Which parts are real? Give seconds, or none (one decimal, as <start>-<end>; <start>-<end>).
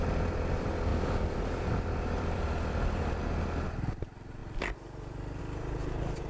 0.0-0.9; 3.2-6.3